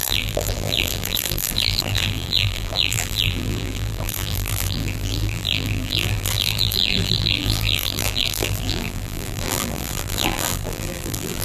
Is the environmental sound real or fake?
fake